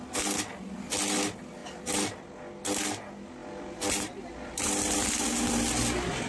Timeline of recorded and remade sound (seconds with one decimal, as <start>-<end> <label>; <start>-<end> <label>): 0.0-6.3 recorded